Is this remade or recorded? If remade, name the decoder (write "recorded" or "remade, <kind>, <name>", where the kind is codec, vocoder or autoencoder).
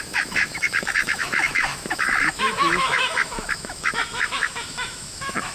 remade, autoencoder, DAC-VAE